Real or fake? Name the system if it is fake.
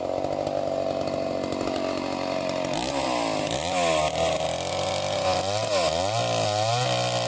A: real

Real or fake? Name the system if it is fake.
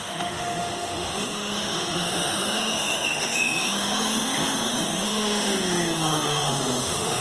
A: fake, autoencoder, DAC-VAE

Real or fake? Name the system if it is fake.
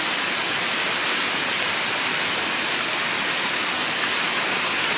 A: real